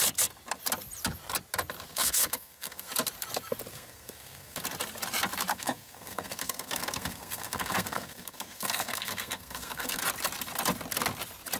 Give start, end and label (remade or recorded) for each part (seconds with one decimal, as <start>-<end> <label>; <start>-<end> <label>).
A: 0.0-1.9 recorded; 1.9-2.9 remade; 2.9-3.7 recorded; 3.7-4.6 remade; 4.6-5.5 recorded; 5.5-10.0 remade; 10.0-11.6 recorded